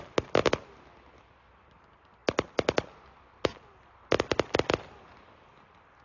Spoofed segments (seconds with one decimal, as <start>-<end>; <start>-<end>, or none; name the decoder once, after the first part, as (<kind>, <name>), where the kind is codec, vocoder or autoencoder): none